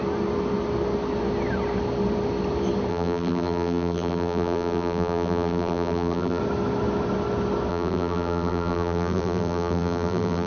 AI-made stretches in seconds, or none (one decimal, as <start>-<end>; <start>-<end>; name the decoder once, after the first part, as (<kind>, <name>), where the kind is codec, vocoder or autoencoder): 2.9-6.4 (vocoder, BigVGAN v2); 7.7-10.5